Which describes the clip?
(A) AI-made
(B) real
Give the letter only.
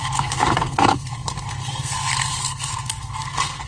A